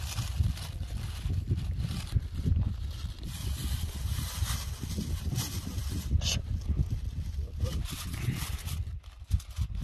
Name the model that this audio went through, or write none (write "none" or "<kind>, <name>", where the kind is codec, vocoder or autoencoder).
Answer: vocoder, BigVGAN v2